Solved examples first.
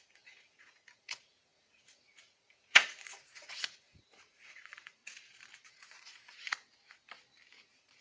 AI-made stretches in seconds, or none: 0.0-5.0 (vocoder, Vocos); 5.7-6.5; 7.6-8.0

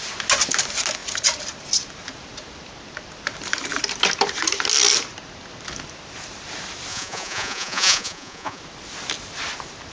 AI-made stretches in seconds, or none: 6.9-8.6 (vocoder, Vocos)